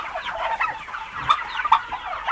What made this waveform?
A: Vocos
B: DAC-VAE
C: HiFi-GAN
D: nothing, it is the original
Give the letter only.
D